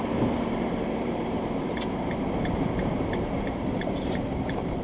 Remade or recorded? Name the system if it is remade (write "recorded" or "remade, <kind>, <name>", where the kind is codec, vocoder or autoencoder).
remade, vocoder, BigVGAN v2